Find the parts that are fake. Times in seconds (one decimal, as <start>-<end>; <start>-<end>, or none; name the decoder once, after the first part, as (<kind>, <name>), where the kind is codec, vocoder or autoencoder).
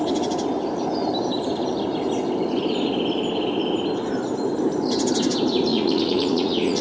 5.7-6.8 (vocoder, Vocos)